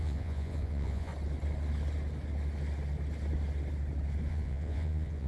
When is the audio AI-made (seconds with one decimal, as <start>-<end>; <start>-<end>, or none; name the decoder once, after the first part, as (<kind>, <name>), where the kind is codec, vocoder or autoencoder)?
0.0-1.1 (vocoder, Vocos); 4.3-5.3